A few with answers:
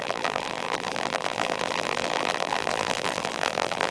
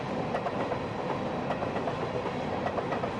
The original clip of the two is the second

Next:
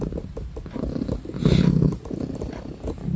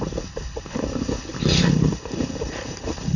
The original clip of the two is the first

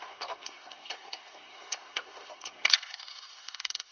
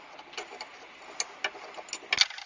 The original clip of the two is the second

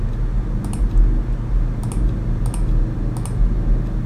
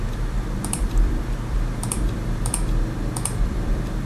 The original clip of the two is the first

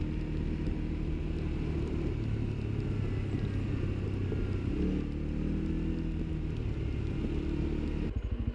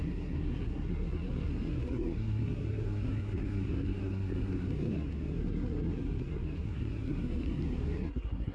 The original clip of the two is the first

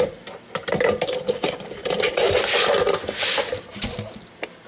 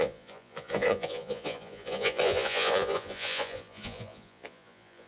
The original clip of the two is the first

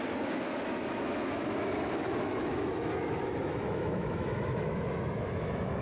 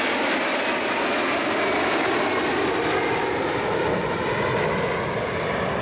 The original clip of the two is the second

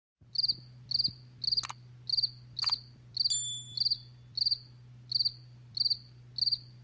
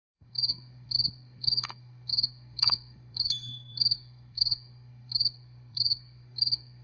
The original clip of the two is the first